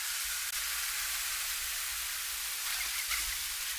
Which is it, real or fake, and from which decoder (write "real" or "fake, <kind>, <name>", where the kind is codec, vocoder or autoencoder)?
real